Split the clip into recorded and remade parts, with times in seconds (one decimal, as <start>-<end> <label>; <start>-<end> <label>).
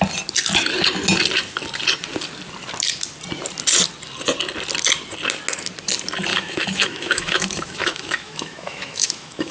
0.0-6.3 recorded; 6.3-9.5 remade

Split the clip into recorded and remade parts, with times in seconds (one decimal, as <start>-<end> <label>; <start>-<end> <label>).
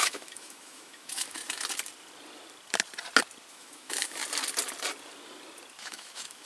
0.0-1.4 remade; 1.4-3.5 recorded; 3.5-4.2 remade; 4.2-5.8 recorded; 5.8-6.5 remade